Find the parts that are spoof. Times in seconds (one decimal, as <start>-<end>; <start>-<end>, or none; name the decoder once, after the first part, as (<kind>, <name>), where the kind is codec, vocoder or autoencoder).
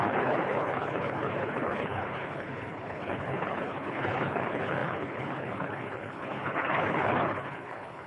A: 0.0-8.1 (codec, HILCodec)